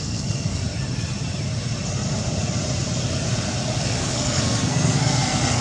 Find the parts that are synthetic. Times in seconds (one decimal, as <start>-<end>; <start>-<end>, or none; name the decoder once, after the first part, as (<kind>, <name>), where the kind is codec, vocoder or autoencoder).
0.0-0.6 (codec, SNAC); 3.8-5.6